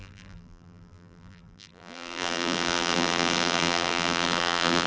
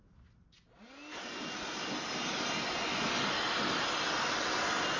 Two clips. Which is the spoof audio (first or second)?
first